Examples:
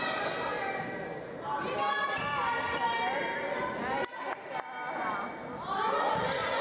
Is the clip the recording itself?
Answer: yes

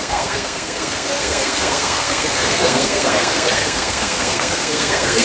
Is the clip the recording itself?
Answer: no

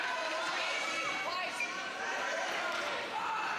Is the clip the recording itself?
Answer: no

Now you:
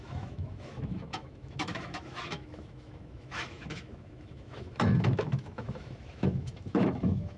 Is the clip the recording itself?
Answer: no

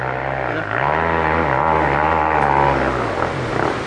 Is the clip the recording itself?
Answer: yes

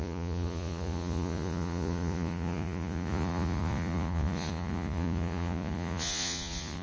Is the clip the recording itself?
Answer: no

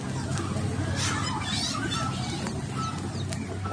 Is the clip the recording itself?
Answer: yes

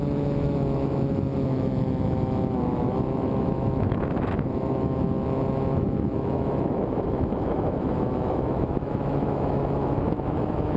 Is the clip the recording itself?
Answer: no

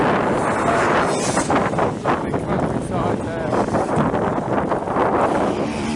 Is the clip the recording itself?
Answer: yes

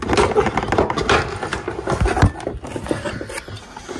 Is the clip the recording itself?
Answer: yes